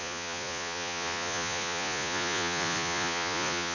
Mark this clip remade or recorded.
remade